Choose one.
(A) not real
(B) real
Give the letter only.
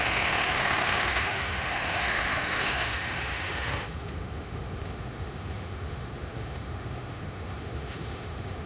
A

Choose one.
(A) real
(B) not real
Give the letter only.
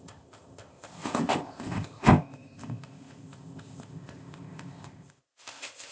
B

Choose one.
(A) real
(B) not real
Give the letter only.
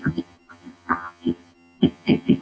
B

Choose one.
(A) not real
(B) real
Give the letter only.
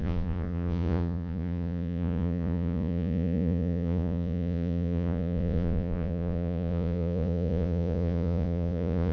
A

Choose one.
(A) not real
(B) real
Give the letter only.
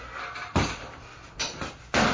B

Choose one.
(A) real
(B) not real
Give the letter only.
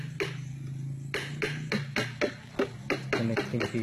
A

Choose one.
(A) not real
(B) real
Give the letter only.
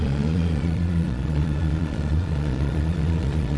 A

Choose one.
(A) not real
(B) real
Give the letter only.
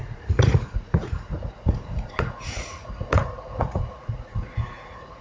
A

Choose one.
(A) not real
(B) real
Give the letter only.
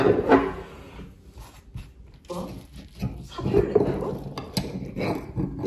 B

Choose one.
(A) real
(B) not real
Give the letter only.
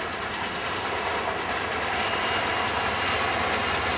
A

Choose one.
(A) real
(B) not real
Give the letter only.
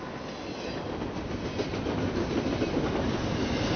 A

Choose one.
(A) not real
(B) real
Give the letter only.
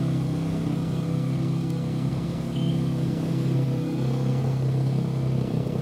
A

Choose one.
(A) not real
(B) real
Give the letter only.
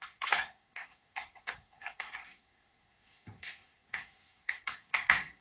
A